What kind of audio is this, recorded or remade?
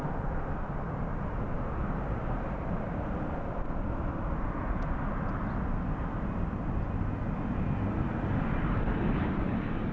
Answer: recorded